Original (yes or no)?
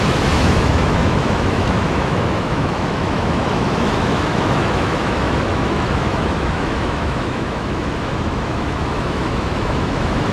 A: no